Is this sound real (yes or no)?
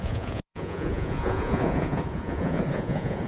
no